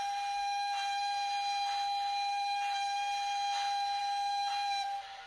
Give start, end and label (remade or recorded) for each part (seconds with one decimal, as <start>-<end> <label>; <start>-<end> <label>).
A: 0.0-5.3 recorded